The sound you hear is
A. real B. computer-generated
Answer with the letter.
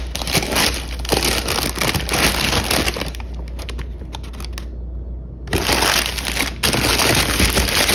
A